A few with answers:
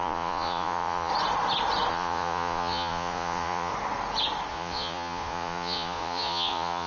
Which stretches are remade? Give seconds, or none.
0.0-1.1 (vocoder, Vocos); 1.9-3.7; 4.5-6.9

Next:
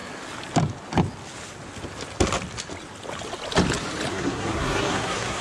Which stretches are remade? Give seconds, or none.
4.1-5.4 (codec, SNAC)

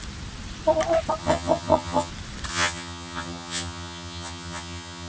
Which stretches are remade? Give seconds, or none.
1.2-2.1 (vocoder, HiFi-GAN); 2.5-5.1